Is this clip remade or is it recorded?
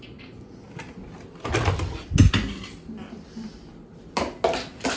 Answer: recorded